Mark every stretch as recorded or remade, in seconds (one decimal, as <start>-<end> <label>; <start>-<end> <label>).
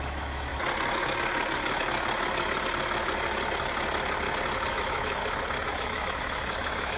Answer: 0.0-0.5 remade; 0.5-4.7 recorded; 4.7-5.2 remade; 5.2-5.7 recorded; 5.7-7.0 remade